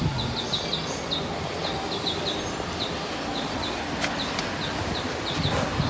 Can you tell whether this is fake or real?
real